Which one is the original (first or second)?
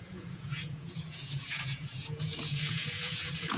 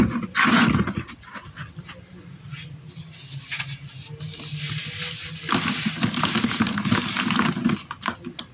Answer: second